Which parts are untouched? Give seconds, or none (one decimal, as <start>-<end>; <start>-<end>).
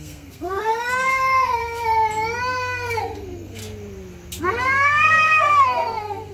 1.6-2.4; 3.6-4.4